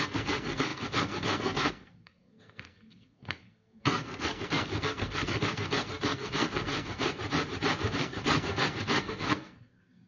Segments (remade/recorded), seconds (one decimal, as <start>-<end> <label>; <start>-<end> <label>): 0.0-7.2 remade; 7.2-8.0 recorded; 8.0-10.1 remade